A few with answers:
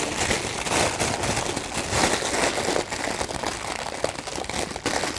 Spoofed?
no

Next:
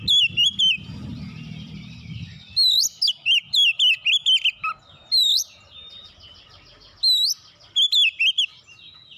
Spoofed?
no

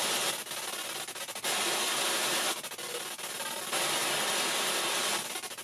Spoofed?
no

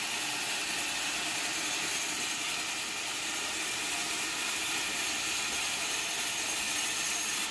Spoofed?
no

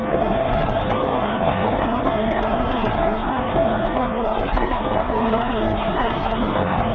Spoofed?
yes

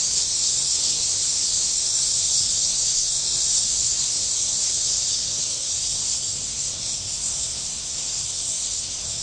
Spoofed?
yes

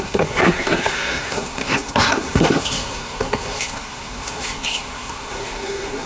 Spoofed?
yes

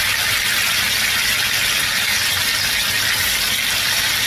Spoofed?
no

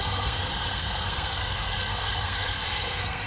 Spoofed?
yes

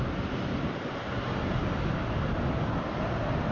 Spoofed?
no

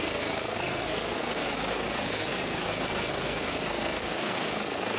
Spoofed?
yes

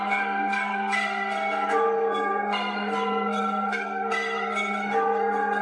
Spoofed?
yes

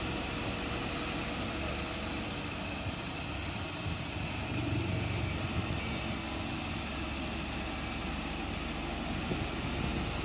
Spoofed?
no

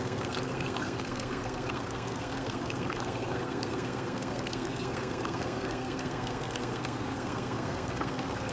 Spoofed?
yes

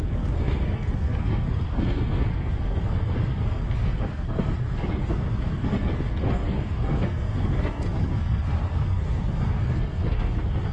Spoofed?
yes